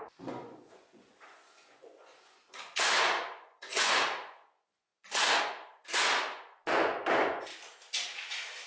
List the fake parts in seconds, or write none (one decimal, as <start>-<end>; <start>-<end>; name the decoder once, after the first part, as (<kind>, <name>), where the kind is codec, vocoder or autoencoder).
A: 0.0-7.5 (vocoder, Vocos)